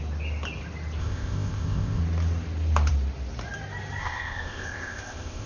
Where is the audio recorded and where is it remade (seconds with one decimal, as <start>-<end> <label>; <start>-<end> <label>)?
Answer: 0.0-1.0 recorded; 1.0-2.0 remade; 2.0-4.0 recorded; 4.0-5.5 remade